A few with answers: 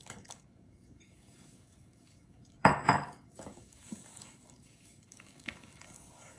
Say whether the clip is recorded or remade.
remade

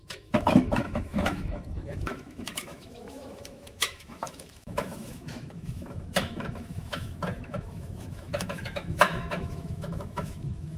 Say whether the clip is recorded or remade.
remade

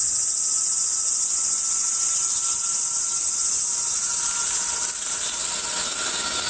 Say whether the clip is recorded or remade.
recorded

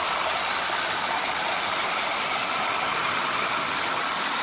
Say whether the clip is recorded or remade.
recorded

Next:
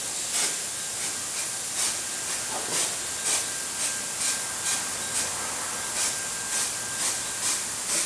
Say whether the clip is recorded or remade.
recorded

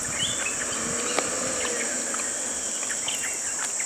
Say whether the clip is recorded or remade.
recorded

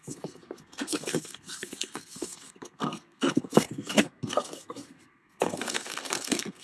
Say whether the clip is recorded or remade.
remade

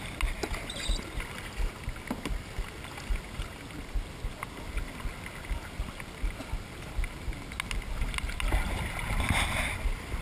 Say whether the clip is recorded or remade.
recorded